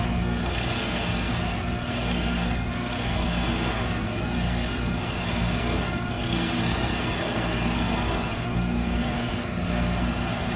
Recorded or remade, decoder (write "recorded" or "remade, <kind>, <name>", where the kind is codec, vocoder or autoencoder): remade, codec, SNAC